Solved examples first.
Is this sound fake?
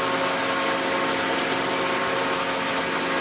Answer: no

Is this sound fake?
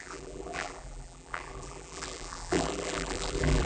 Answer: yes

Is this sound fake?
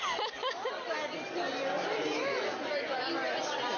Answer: no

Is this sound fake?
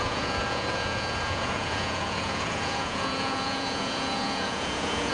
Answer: yes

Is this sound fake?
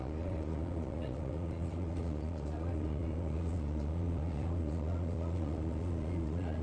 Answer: yes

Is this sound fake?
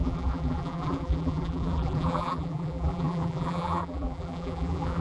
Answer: yes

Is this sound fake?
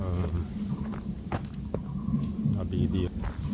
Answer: no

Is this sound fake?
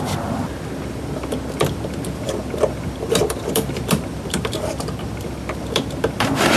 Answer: yes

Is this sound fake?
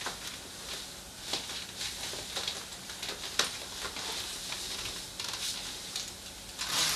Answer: no